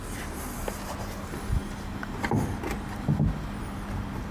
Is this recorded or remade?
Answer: recorded